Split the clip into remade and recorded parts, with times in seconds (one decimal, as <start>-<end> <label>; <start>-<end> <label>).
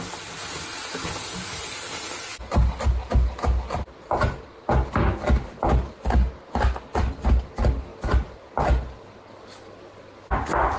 0.0-10.8 recorded